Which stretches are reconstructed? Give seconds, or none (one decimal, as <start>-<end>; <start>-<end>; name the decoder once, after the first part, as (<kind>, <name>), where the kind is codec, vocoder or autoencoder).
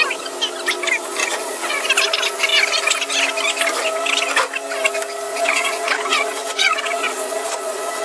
1.2-1.9 (vocoder, Vocos); 5.3-8.0